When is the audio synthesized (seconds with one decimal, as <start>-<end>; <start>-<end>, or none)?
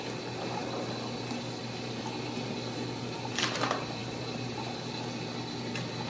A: none